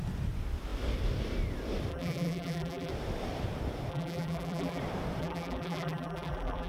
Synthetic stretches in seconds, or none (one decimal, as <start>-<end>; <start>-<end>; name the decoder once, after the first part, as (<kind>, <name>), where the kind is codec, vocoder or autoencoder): 1.9-2.9 (vocoder, BigVGAN v2); 3.9-4.8; 5.2-6.7